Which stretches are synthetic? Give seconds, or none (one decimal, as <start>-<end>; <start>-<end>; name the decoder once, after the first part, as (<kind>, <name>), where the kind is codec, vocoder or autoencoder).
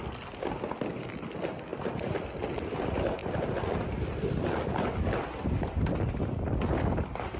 3.2-5.9 (vocoder, BigVGAN v2)